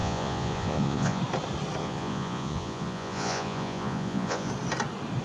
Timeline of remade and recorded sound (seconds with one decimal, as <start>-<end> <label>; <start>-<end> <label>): 0.0-1.2 remade; 1.2-1.8 recorded; 1.8-4.5 remade; 4.5-5.2 recorded